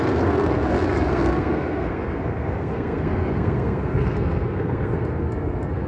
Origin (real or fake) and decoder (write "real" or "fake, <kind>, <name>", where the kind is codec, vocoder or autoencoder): fake, codec, SNAC